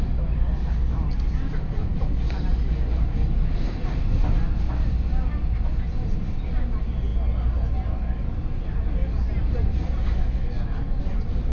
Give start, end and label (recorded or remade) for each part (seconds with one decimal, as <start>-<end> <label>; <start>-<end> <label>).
0.0-11.5 recorded